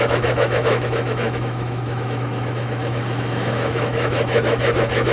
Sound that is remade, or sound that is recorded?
remade